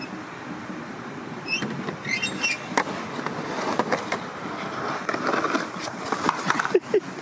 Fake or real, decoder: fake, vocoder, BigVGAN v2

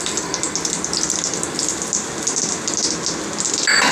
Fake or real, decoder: real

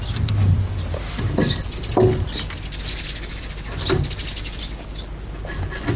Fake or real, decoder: real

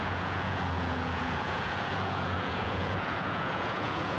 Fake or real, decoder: fake, vocoder, Vocos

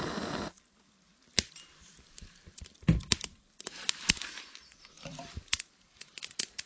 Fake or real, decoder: fake, vocoder, BigVGAN v2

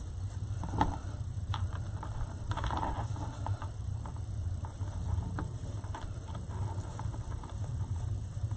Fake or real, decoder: fake, vocoder, BigVGAN v2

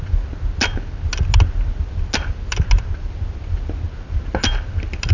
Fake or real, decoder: real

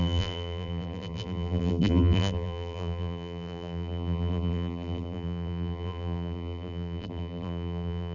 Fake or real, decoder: fake, vocoder, BigVGAN v2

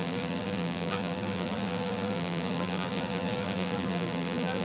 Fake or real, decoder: fake, vocoder, BigVGAN v2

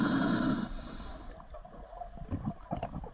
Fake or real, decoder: real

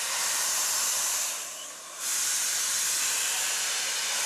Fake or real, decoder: fake, vocoder, BigVGAN v2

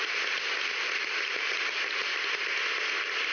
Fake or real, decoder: real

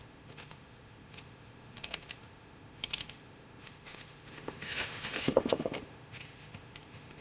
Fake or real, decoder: fake, autoencoder, DAC-VAE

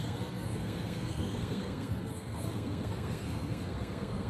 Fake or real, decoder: fake, codec, SNAC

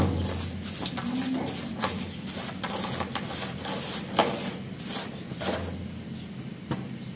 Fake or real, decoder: real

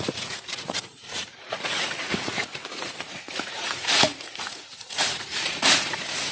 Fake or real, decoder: fake, vocoder, Vocos